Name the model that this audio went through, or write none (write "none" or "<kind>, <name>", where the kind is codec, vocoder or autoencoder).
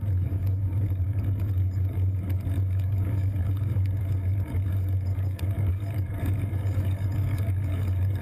codec, DAC